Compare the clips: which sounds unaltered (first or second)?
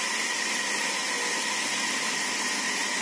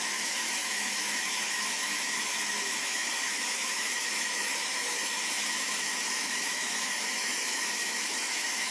first